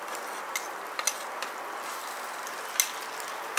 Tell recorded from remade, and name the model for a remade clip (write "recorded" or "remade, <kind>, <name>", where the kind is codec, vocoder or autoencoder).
recorded